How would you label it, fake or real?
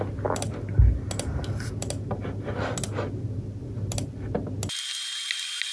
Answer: real